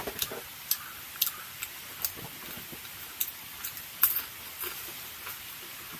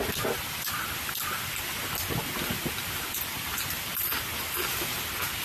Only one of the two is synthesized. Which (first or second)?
first